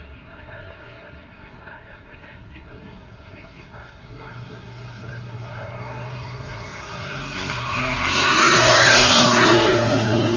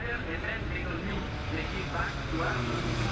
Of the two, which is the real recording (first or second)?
second